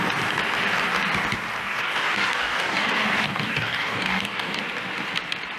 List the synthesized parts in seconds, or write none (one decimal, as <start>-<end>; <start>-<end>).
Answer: 1.6-4.6